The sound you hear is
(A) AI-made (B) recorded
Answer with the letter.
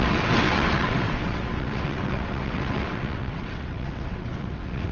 A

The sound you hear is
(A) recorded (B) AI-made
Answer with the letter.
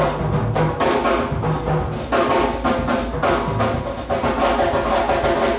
A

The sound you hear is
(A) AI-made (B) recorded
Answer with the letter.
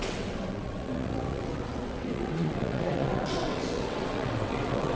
A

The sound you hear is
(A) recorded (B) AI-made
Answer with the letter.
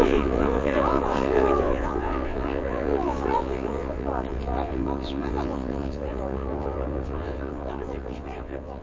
B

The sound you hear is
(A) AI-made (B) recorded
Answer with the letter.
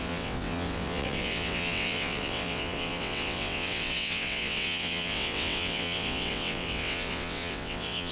A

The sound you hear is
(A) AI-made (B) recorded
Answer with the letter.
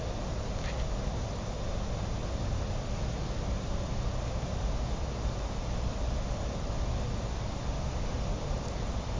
B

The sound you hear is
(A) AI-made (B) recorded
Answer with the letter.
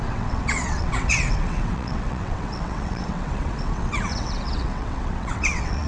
A